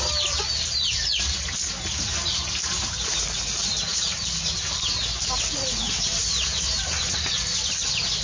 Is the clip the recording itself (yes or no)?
yes